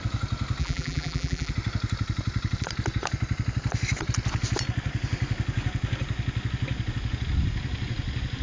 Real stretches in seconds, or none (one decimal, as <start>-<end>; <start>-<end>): 0.0-0.6; 1.5-8.4